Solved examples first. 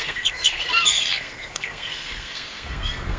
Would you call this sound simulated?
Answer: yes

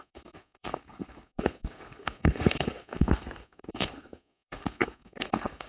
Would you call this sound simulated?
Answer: yes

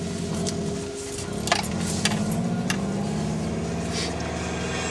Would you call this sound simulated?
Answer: no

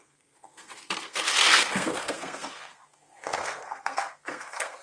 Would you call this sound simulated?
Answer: yes